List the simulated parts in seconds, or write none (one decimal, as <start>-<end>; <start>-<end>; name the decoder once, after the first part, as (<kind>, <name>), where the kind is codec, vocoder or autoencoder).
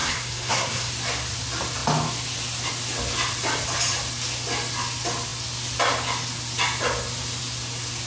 0.0-0.9 (codec, SNAC)